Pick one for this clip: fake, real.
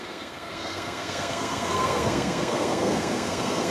fake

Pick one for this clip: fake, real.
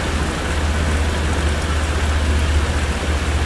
real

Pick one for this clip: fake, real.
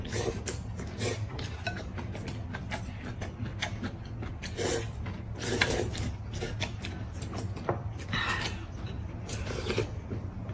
real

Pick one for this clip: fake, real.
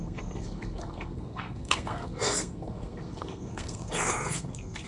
fake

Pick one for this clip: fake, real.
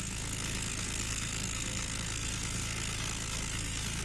fake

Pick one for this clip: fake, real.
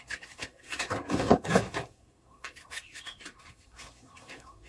fake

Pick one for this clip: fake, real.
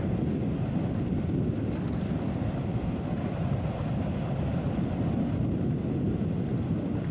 real